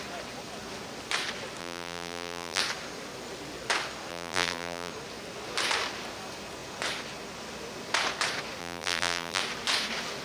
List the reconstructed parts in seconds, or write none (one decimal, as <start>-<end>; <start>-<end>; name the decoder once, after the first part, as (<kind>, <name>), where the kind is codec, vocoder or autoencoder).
1.6-2.6 (vocoder, BigVGAN v2); 4.1-4.9; 8.6-9.4